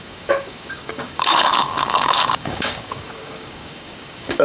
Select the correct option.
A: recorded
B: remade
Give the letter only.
B